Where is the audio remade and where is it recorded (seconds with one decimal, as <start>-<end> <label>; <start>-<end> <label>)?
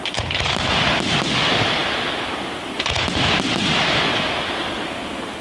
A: 0.0-5.4 recorded